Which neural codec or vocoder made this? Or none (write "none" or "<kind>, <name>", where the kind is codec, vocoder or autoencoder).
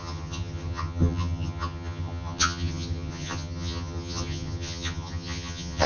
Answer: vocoder, HiFi-GAN